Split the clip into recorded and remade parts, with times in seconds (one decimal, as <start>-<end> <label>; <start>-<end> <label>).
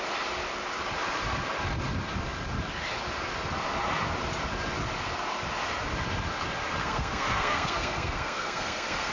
0.0-6.8 recorded; 6.8-9.1 remade